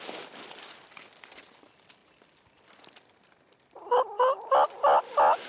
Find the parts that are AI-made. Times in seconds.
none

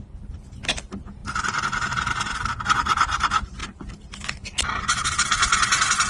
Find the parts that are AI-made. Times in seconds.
none

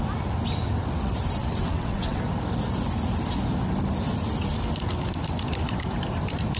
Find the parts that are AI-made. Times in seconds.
1.4-2.2

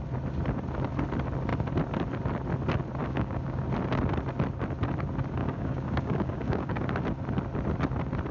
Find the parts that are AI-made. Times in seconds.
3.0-3.6; 5.4-6.8

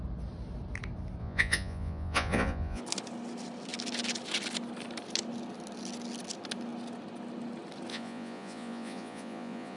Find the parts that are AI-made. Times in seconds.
1.2-2.8; 7.9-9.8